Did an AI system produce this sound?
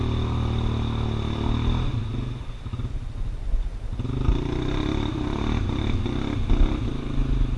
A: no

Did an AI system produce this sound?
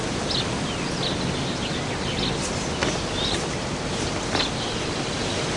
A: no